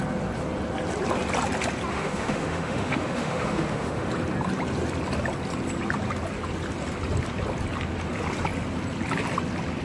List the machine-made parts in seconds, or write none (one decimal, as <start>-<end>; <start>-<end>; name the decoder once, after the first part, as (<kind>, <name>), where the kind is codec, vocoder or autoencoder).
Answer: 1.9-4.1 (autoencoder, DAC-VAE)